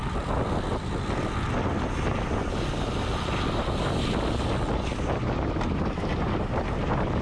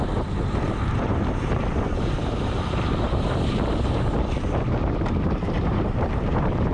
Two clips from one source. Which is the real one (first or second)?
first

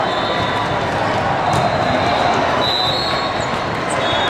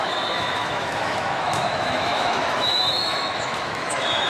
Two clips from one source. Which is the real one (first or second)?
first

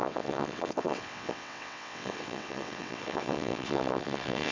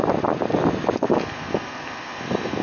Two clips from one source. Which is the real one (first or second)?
second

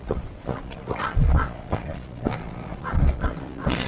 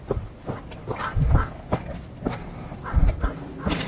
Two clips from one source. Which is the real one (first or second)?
second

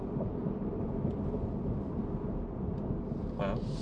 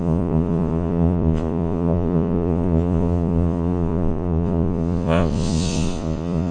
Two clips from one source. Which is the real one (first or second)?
first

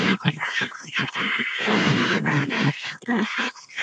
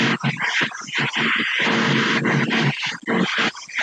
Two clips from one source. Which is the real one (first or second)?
second